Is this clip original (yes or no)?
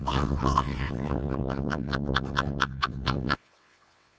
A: no